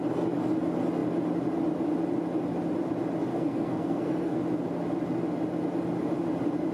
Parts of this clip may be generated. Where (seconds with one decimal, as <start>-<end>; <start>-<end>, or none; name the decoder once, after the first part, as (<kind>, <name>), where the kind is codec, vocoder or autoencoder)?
3.3-4.4 (codec, SNAC)